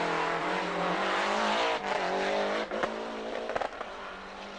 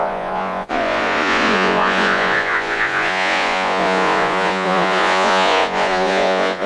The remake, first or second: second